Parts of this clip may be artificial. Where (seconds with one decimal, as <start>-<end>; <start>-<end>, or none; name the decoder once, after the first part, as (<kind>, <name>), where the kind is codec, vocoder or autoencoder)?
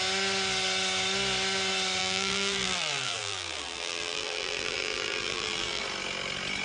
2.0-5.8 (vocoder, BigVGAN v2)